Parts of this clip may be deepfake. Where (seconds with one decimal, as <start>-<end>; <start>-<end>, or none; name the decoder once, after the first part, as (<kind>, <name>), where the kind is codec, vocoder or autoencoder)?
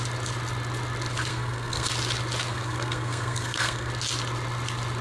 1.3-1.9 (codec, SNAC); 2.5-3.9